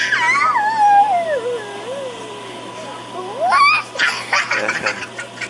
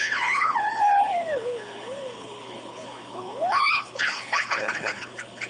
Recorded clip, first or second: first